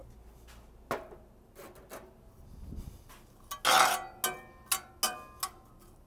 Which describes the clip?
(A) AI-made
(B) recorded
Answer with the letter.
B